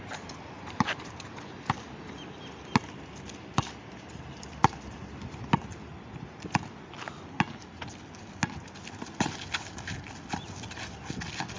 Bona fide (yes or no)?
yes